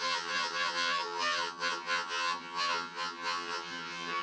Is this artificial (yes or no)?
yes